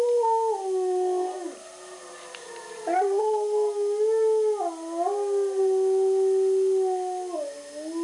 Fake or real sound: real